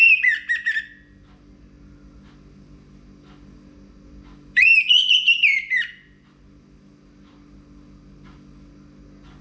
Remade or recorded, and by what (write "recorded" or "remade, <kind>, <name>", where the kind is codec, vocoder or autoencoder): recorded